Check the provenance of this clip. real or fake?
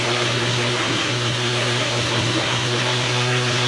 fake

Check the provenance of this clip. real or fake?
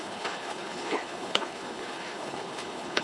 fake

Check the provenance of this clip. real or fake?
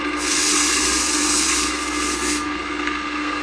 fake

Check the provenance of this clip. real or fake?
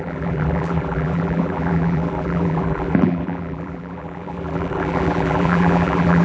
fake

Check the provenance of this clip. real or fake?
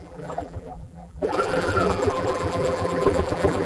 fake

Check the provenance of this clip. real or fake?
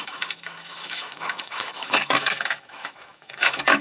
fake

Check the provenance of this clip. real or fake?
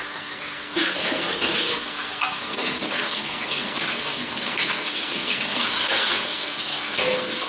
fake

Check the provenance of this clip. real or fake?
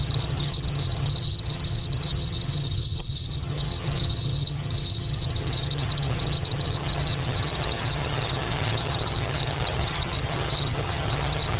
fake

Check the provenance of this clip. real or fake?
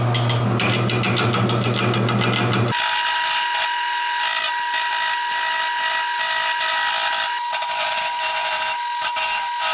real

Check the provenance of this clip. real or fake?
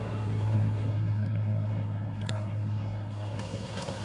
fake